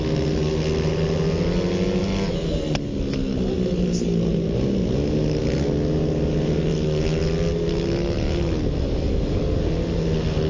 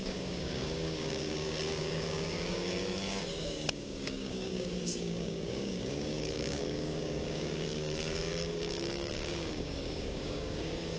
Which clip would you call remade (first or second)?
second